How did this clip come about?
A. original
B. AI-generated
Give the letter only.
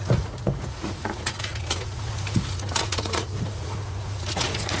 B